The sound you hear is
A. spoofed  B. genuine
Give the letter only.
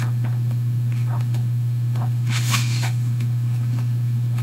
A